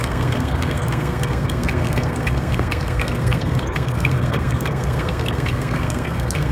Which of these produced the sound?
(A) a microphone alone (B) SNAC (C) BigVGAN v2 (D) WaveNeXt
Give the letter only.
B